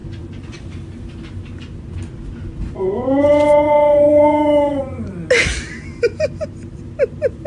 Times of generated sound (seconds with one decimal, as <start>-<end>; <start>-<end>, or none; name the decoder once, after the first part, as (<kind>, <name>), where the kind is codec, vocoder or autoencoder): 4.1-4.8 (autoencoder, DAC-VAE)